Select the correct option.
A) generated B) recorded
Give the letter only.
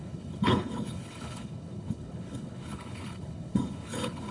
A